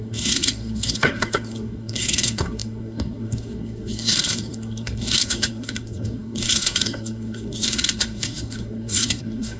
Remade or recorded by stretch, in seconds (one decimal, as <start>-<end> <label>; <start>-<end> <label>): 0.0-9.6 remade